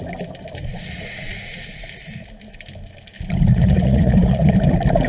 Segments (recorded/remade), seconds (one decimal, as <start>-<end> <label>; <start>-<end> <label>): 0.0-0.6 recorded; 0.6-1.8 remade; 1.8-3.5 recorded; 3.5-4.5 remade; 4.5-5.1 recorded